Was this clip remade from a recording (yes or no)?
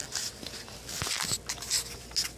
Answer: no